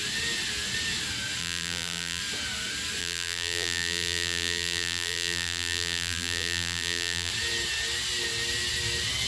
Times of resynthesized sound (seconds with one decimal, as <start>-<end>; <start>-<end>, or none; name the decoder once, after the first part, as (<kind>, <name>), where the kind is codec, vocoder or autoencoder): 1.4-2.2 (vocoder, BigVGAN v2); 3.0-7.3